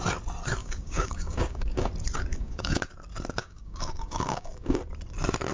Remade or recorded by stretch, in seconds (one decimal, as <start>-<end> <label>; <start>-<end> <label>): 0.0-0.6 recorded; 0.6-1.9 remade; 1.9-2.3 recorded; 2.3-2.8 remade; 2.8-3.4 recorded; 3.4-4.8 remade; 4.8-5.5 recorded